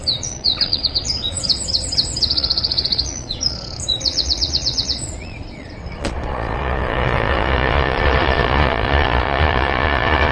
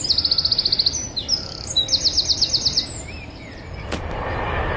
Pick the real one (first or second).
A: second